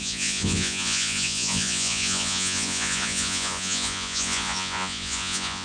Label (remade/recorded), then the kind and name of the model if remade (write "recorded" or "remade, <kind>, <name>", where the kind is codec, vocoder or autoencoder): remade, vocoder, Vocos